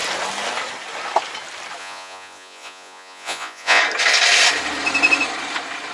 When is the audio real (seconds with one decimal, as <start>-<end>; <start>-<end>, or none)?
0.0-1.8; 3.8-5.9